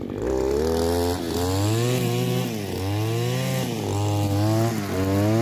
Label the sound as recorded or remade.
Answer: recorded